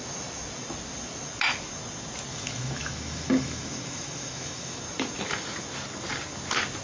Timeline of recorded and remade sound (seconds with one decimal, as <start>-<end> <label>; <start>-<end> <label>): 0.0-2.3 recorded; 2.3-4.8 remade; 4.8-6.8 recorded